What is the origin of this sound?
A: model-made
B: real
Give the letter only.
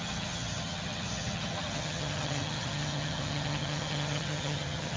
A